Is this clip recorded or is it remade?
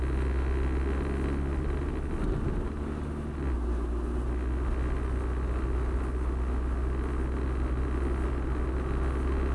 recorded